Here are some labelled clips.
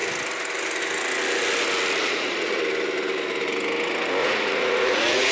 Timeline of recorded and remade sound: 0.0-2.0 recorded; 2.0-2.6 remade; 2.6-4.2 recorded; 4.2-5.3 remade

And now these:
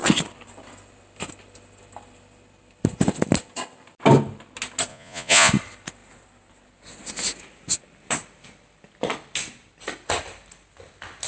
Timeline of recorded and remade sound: 0.0-4.9 recorded; 4.9-5.5 remade; 5.5-11.3 recorded

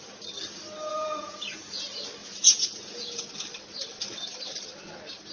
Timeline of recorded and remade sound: 0.0-0.9 recorded; 0.9-1.8 remade; 1.8-2.2 recorded; 2.2-3.3 remade; 3.3-5.3 recorded

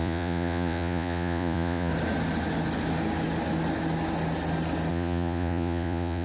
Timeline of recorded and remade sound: 0.0-1.9 remade; 1.9-4.9 recorded; 4.9-6.2 remade

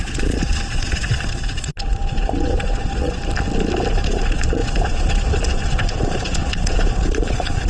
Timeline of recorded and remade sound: 0.0-3.2 remade; 3.2-3.9 recorded; 3.9-7.7 remade